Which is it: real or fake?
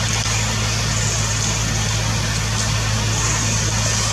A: real